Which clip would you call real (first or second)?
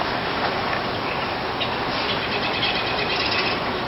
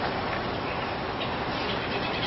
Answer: first